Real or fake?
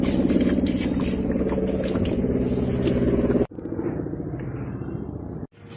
real